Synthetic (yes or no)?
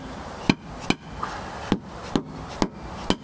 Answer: no